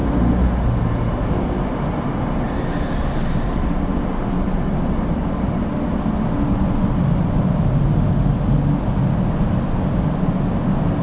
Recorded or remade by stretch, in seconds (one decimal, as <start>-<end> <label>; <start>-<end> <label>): 0.0-11.0 recorded